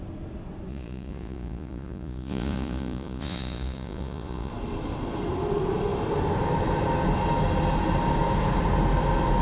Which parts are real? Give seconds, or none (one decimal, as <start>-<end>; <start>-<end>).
0.0-0.7; 4.5-9.4